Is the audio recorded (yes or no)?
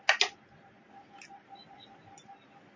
yes